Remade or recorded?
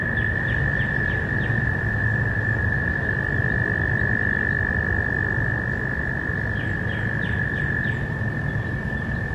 remade